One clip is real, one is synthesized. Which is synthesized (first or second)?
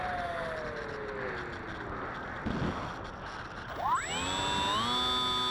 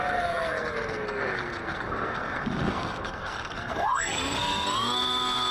second